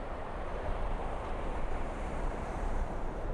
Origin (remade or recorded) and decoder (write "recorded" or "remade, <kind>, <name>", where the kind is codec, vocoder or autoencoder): remade, vocoder, BigVGAN v2